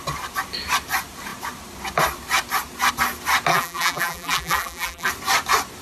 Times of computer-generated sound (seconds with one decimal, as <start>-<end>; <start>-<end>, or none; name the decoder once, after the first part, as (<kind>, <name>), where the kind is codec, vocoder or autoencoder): 3.5-5.1 (vocoder, BigVGAN v2)

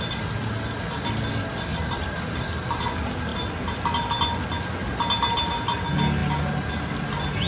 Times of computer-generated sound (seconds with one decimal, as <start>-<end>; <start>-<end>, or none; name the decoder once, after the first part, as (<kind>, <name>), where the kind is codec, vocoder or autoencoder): 1.7-2.8 (vocoder, BigVGAN v2)

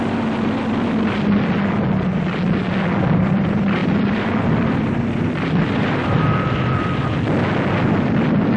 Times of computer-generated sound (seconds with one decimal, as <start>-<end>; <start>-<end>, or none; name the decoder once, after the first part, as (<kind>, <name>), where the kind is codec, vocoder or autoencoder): 3.8-7.2 (vocoder, BigVGAN v2)